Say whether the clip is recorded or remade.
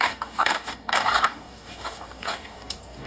remade